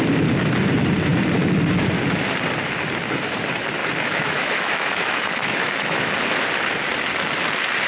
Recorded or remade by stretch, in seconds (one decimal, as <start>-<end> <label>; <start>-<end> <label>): 0.0-3.8 recorded; 3.8-6.1 remade; 6.1-7.9 recorded

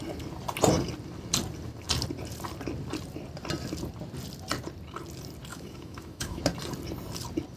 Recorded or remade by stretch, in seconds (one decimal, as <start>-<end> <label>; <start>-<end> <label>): 0.0-5.5 recorded; 5.5-6.4 remade; 6.4-7.6 recorded